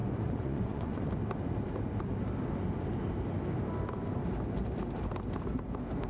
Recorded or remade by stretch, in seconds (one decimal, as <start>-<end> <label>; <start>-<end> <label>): 0.0-1.1 remade; 1.1-6.1 recorded